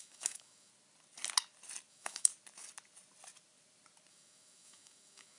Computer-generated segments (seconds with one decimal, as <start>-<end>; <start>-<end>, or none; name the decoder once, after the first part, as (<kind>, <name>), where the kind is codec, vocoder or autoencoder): 0.0-0.7 (autoencoder, DAC-VAE); 1.9-2.3; 4.1-5.4